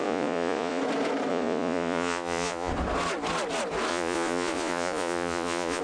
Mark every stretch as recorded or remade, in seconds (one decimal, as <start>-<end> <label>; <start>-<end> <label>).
0.0-0.8 remade; 0.8-1.3 recorded; 1.3-2.7 remade; 2.7-3.9 recorded; 3.9-5.8 remade